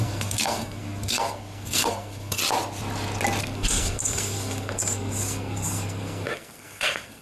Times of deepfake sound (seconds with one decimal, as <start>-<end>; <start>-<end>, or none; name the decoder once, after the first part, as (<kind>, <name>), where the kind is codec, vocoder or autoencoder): 0.0-2.4 (codec, SNAC); 3.4-7.2